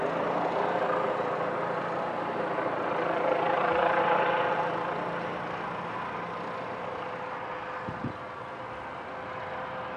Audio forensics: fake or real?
real